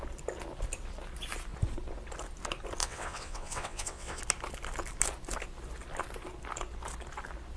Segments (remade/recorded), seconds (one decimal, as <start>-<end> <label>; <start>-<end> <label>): 0.0-2.8 recorded; 2.8-4.2 remade; 4.2-7.6 recorded